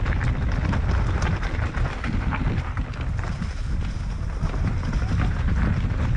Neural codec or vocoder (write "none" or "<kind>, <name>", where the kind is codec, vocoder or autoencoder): none